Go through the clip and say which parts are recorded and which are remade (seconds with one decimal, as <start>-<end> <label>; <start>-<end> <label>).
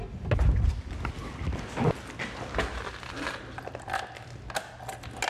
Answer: 0.0-5.3 recorded